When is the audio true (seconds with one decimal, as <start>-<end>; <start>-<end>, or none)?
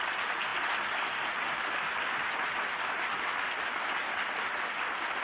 0.0-5.2